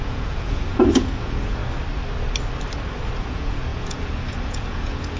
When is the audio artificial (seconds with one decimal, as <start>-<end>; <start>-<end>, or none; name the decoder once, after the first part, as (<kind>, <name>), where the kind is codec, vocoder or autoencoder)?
0.0-1.6 (vocoder, Vocos); 3.2-5.2